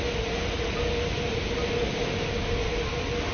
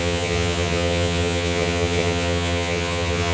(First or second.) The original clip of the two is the first